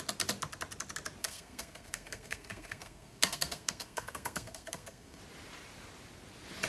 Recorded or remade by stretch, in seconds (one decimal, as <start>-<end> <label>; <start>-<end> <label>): 0.0-1.2 recorded; 1.2-5.2 remade; 5.2-6.7 recorded